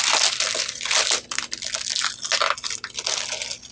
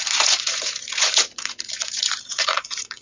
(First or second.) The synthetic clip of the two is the second